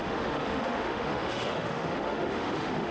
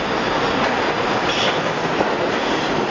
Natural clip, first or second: second